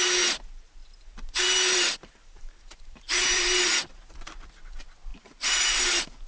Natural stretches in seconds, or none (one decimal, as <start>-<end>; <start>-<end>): 0.0-0.8; 3.0-5.1; 5.8-6.3